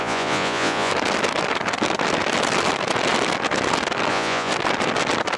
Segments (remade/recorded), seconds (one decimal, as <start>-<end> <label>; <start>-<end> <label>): 0.0-0.9 remade; 0.9-4.1 recorded; 4.1-4.5 remade; 4.5-5.4 recorded